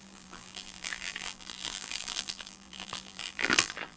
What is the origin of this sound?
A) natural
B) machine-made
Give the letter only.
B